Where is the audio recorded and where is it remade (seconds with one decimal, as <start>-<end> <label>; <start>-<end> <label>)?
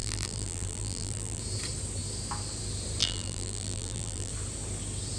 0.0-1.4 remade; 1.4-3.0 recorded; 3.0-4.3 remade; 4.3-5.2 recorded